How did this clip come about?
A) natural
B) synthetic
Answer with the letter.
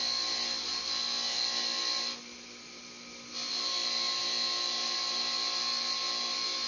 A